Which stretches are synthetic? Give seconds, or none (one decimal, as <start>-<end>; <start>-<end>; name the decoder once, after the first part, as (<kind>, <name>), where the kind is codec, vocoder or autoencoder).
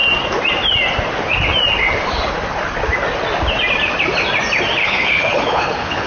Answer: 4.8-6.1 (codec, HILCodec)